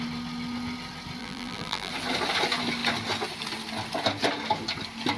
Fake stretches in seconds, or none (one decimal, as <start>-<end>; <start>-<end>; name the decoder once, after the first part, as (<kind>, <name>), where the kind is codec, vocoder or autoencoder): 1.2-1.9 (vocoder, BigVGAN v2)